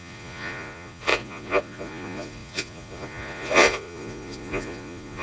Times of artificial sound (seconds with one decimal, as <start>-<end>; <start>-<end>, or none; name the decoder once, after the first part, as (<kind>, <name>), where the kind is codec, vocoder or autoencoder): 0.0-5.2 (vocoder, Vocos)